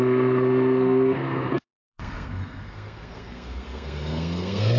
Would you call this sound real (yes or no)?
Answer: no